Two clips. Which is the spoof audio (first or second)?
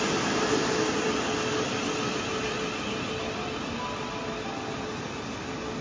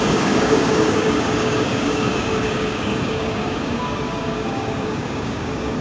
second